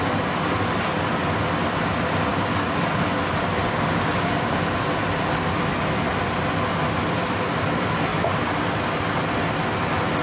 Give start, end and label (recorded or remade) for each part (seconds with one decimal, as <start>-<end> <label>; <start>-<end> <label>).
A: 0.0-2.3 recorded; 2.3-2.8 remade; 2.8-3.6 recorded; 3.6-4.6 remade; 4.6-10.2 recorded